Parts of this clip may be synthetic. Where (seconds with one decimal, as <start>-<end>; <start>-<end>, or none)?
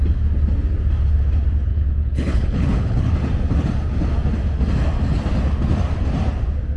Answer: 1.7-3.1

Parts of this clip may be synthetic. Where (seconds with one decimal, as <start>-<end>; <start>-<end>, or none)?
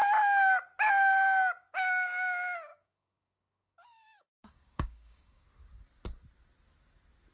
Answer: 2.7-5.5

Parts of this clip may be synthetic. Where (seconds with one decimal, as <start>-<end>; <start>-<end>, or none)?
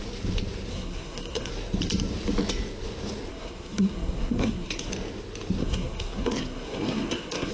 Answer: 0.7-1.5; 3.3-4.9; 5.6-7.5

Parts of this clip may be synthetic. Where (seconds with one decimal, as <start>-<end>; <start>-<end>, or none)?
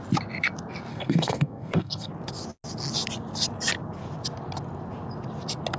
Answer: 0.9-2.1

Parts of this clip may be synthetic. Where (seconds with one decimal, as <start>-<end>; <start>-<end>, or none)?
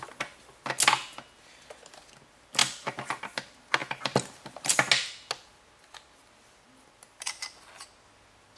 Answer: 2.6-3.2; 3.8-4.9